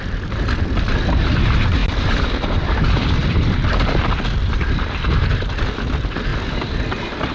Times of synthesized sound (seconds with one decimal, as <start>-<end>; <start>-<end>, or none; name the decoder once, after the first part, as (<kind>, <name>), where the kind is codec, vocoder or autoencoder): 0.0-6.3 (vocoder, BigVGAN v2)